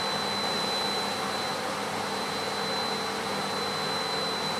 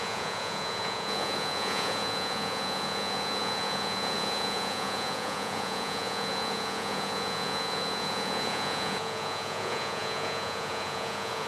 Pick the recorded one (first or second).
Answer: first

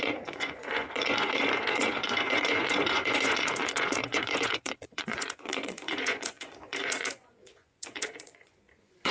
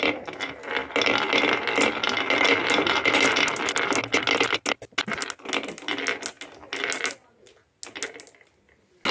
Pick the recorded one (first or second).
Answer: second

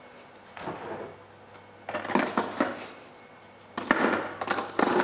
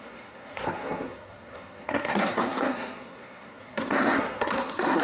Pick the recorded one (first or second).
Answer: first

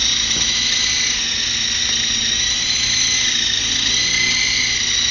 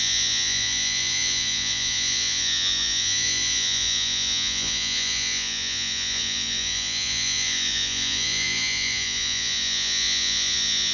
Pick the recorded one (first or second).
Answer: first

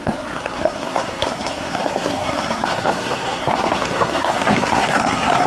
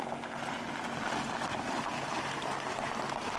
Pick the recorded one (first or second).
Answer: second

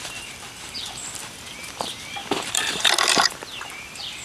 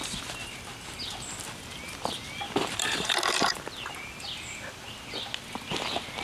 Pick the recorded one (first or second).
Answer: second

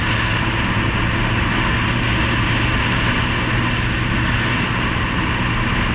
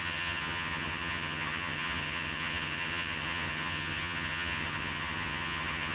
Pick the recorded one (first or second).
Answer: first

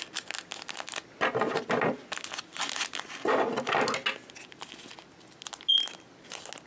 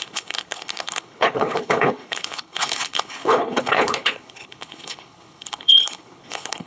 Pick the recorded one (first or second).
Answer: first